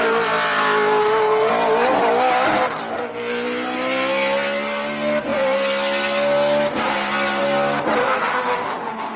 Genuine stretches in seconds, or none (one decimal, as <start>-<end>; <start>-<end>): 0.0-1.0; 1.5-8.0